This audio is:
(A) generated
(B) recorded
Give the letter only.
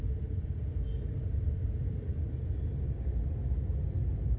B